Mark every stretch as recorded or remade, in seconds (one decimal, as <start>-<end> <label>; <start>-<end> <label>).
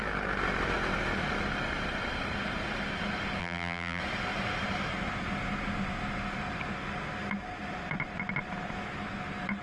0.0-3.4 recorded; 3.4-4.0 remade; 4.0-9.6 recorded